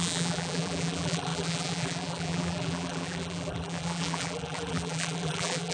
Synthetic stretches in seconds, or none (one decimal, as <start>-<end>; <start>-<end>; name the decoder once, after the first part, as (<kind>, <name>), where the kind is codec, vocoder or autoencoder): 0.0-5.7 (vocoder, BigVGAN v2)